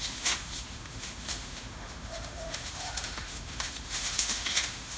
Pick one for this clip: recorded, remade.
remade